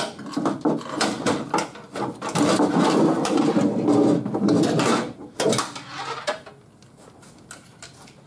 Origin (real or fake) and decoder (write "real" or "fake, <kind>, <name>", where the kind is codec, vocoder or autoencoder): real